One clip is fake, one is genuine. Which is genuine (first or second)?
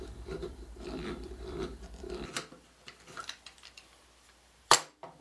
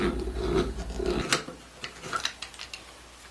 second